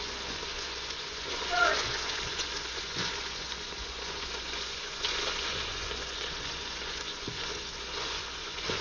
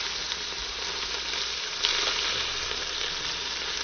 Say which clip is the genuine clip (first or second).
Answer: second